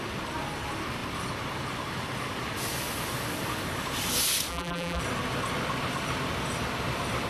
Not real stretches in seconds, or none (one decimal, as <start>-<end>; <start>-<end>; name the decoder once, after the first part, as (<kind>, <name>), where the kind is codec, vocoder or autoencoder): 4.5-5.0 (vocoder, BigVGAN v2)